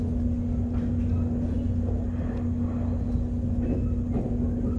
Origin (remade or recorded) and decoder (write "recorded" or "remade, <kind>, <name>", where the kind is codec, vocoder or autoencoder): recorded